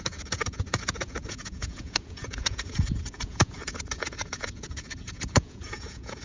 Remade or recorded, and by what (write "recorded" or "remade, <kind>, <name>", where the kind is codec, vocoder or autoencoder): remade, vocoder, Vocos